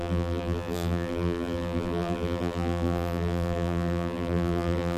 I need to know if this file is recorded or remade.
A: remade